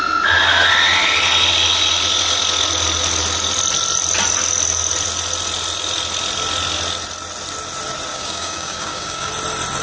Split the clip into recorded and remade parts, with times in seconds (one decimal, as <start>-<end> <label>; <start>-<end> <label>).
0.0-8.1 recorded; 8.1-9.3 remade; 9.3-9.8 recorded